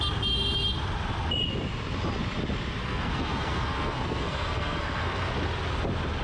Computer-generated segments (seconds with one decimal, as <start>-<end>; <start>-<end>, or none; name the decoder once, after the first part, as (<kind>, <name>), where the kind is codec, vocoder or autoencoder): 2.8-5.3 (codec, SNAC)